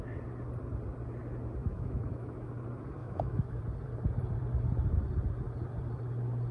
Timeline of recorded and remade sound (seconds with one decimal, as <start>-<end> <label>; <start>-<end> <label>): 0.0-1.6 recorded; 1.6-2.5 remade; 2.5-3.0 recorded; 3.0-3.6 remade; 3.6-6.5 recorded